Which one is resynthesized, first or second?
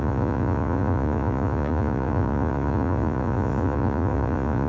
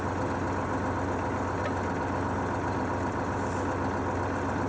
first